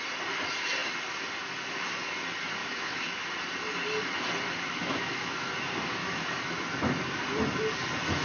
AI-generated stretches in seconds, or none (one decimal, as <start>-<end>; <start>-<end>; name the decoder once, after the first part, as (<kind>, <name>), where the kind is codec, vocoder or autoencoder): 2.6-3.3 (autoencoder, DAC-VAE); 4.7-5.5; 6.0-6.5